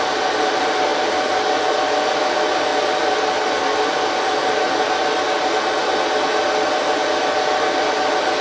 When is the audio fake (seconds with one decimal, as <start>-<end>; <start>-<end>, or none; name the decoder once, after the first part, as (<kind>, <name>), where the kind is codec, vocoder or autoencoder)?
none